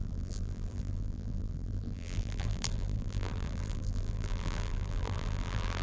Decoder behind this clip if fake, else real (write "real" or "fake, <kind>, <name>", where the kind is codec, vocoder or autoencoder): fake, vocoder, BigVGAN v2